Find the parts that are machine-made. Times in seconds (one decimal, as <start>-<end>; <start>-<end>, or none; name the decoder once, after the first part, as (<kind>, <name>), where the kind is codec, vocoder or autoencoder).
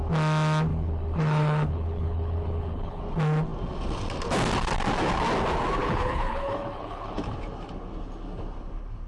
0.7-3.0 (codec, HILCodec); 5.8-7.2